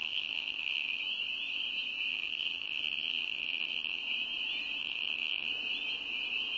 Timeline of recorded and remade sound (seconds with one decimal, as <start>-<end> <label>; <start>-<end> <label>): 0.0-1.0 remade; 1.0-2.1 recorded; 2.1-4.0 remade; 4.0-4.8 recorded; 4.8-5.5 remade; 5.5-6.6 recorded